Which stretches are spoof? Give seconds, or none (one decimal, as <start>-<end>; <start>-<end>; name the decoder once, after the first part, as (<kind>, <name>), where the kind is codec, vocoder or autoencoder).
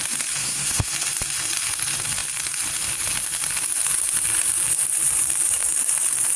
0.4-0.9 (codec, SNAC)